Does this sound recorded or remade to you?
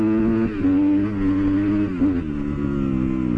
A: recorded